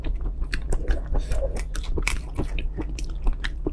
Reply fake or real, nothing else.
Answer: fake